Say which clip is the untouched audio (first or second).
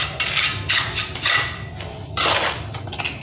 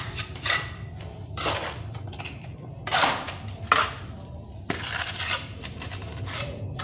first